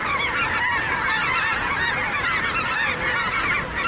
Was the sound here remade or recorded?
recorded